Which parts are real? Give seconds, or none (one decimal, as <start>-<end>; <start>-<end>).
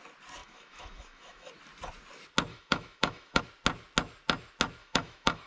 0.0-0.4; 1.5-2.5; 3.4-4.8